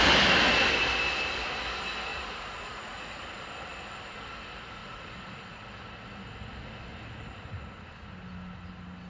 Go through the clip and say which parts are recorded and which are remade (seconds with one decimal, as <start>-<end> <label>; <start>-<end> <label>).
0.0-2.1 recorded; 2.1-3.2 remade; 3.2-4.8 recorded; 4.8-5.6 remade; 5.6-9.1 recorded